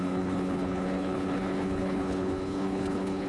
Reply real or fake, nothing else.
fake